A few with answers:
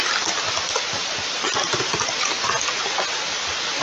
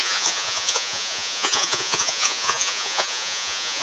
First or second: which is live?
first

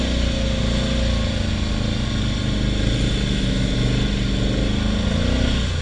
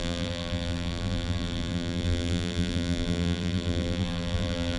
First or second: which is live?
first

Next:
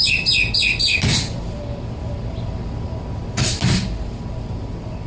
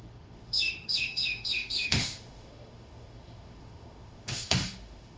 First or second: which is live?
first